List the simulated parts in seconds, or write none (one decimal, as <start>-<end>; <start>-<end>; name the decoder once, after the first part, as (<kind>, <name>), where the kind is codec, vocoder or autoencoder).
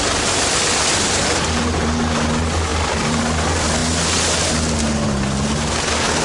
2.7-3.2 (vocoder, BigVGAN v2)